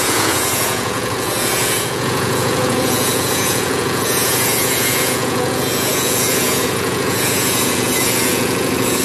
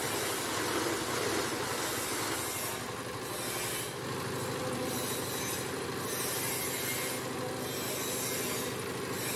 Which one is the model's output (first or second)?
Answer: first